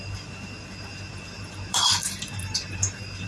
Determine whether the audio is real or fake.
fake